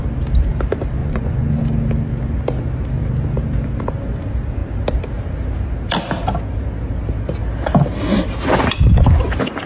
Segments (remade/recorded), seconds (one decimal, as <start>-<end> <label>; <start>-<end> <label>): 0.0-1.0 recorded; 1.0-1.6 remade; 1.6-9.7 recorded